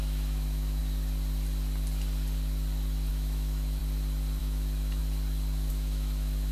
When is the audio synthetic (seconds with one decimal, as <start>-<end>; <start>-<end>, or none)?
0.0-0.8; 3.1-3.8; 4.4-5.0; 5.7-6.5